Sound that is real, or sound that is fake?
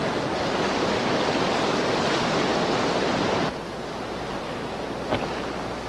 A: fake